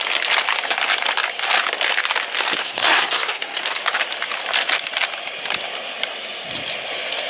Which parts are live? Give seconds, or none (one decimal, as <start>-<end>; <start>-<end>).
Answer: 0.0-2.6; 3.6-7.3